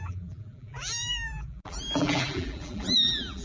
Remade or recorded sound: remade